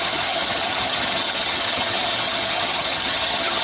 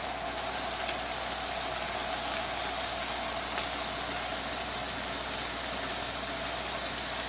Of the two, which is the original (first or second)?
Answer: second